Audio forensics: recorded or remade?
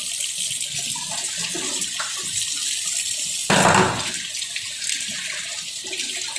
recorded